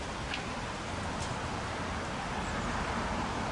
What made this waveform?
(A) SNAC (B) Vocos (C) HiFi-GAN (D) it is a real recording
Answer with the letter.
D